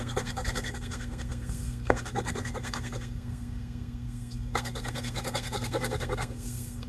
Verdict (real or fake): fake